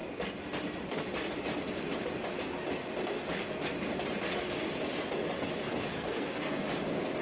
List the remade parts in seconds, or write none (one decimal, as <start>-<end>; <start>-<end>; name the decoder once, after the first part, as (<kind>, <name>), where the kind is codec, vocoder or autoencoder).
5.9-6.6 (codec, SNAC)